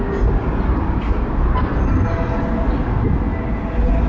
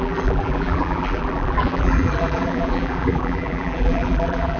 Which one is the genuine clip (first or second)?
first